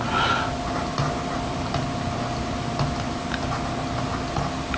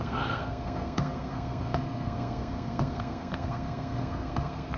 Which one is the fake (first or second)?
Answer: second